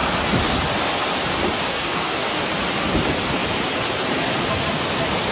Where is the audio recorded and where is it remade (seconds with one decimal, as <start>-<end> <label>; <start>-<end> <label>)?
0.0-1.7 recorded; 1.7-2.3 remade; 2.3-5.3 recorded